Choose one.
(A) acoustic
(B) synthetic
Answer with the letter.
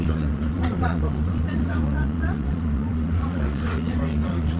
B